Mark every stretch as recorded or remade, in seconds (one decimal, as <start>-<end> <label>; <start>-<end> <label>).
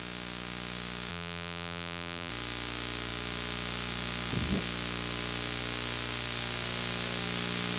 0.0-1.1 recorded; 1.1-2.3 remade; 2.3-7.8 recorded